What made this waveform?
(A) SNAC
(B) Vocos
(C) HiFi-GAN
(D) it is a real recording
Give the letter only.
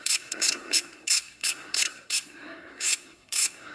A